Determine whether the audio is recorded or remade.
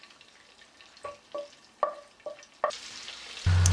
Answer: recorded